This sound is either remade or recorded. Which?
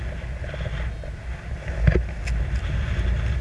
recorded